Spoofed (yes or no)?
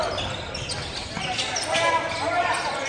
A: no